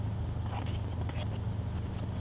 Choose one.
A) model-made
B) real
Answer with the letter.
B